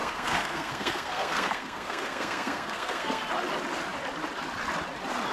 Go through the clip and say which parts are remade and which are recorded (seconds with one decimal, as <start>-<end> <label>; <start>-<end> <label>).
0.0-3.2 remade; 3.2-5.3 recorded